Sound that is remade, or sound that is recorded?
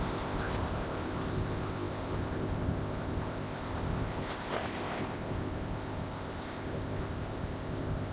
remade